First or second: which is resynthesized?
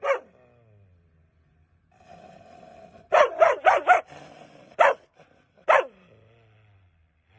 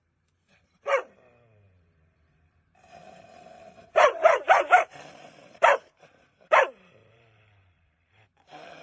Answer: second